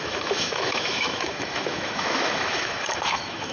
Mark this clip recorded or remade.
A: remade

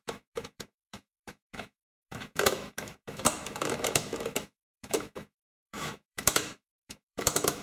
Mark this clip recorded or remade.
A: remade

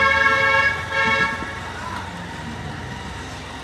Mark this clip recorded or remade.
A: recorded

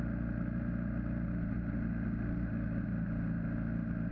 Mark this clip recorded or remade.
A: recorded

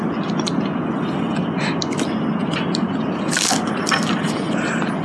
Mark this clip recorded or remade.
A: recorded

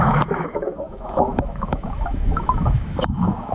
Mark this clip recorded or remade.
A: remade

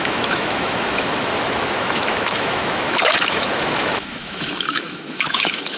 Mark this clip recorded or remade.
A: remade